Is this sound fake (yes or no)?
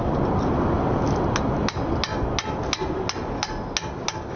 no